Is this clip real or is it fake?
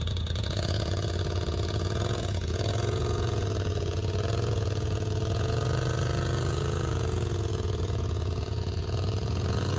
fake